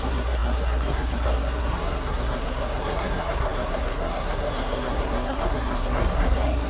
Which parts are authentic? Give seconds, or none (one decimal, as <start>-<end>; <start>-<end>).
none